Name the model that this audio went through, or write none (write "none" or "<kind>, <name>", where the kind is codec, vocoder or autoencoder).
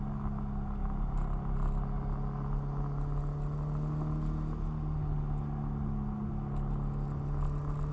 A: none